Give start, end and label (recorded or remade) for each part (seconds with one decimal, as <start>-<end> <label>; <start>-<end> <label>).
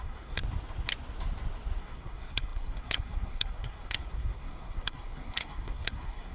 0.0-0.4 remade; 0.4-1.8 recorded; 1.8-6.3 remade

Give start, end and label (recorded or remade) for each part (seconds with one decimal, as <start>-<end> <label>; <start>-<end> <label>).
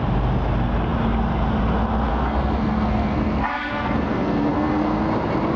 0.0-2.1 recorded; 2.1-5.0 remade; 5.0-5.6 recorded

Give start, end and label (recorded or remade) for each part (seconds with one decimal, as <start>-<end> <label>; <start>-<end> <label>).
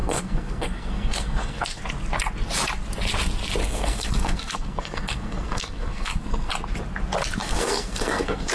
0.0-1.8 remade; 1.8-3.6 recorded; 3.6-6.5 remade; 6.5-7.4 recorded; 7.4-8.5 remade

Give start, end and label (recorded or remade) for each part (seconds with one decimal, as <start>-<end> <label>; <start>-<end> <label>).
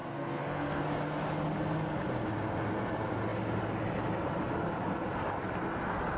0.0-0.8 remade; 0.8-6.2 recorded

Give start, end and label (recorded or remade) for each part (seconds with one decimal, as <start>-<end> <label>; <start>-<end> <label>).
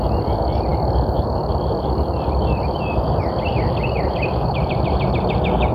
0.0-5.7 recorded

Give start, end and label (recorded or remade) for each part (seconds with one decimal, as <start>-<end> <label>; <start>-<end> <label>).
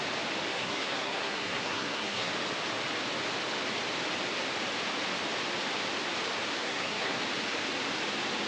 0.0-0.5 recorded; 0.5-2.3 remade; 2.3-6.6 recorded; 6.6-7.2 remade; 7.2-8.5 recorded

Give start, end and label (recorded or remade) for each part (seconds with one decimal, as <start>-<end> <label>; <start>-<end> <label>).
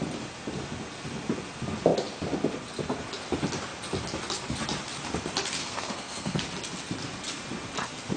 0.0-5.6 recorded; 5.6-6.4 remade; 6.4-8.2 recorded